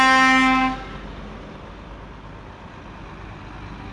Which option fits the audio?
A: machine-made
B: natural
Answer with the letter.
B